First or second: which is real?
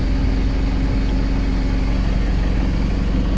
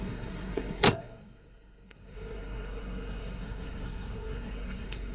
first